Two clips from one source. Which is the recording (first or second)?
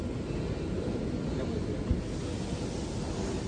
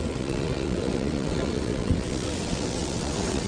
first